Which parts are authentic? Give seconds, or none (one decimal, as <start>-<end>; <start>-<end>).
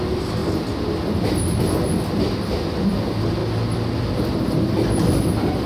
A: 0.0-5.7